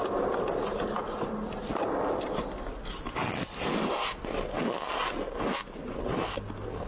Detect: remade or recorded recorded